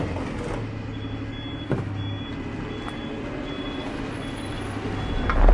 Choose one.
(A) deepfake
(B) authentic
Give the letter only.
B